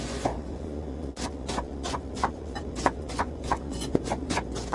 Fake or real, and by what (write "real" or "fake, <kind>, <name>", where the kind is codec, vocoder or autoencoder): fake, vocoder, Vocos